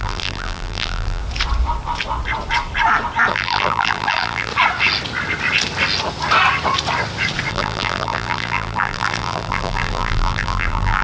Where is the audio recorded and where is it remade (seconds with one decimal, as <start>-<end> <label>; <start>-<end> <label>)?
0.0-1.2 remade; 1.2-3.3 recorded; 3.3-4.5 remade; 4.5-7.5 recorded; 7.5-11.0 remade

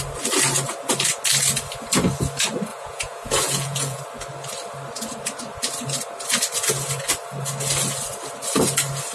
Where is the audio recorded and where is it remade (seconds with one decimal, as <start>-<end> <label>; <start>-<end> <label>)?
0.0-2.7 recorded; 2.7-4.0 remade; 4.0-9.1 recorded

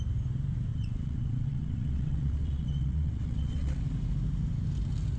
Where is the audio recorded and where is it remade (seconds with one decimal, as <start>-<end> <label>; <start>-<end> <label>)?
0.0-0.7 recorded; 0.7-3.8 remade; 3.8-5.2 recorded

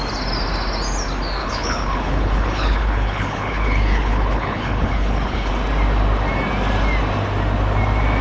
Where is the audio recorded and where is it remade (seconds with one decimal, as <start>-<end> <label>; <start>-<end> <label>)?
0.0-1.4 recorded; 1.4-5.5 remade; 5.5-8.2 recorded

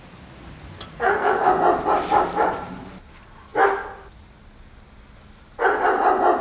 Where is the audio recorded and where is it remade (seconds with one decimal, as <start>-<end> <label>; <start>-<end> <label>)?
0.0-0.9 recorded; 0.9-1.5 remade; 1.5-6.4 recorded

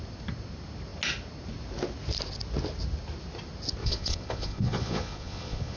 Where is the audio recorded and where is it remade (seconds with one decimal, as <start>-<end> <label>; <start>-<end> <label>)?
0.0-3.8 recorded; 3.8-5.8 remade

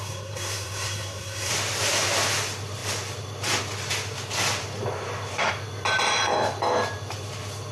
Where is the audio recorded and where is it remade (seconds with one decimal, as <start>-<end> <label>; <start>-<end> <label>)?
0.0-1.5 remade; 1.5-7.7 recorded

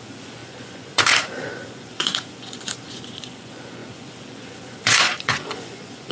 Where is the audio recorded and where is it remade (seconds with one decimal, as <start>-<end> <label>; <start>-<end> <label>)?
0.0-6.1 remade